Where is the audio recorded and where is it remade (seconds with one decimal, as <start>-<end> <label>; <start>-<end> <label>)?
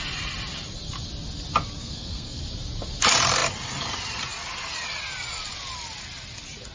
0.0-1.8 recorded; 1.8-2.4 remade; 2.4-6.7 recorded